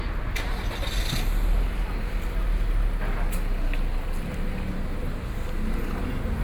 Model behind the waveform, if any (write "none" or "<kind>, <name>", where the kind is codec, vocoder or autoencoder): none